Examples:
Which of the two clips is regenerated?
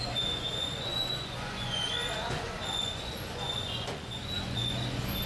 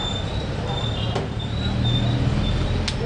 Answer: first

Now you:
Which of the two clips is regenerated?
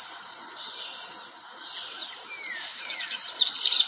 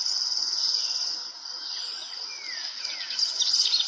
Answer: first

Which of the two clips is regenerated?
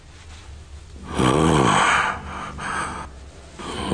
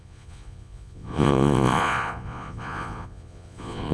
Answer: second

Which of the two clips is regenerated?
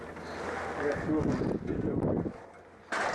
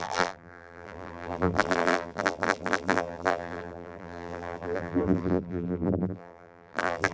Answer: second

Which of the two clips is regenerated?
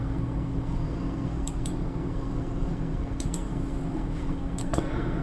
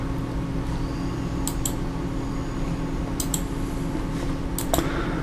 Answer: first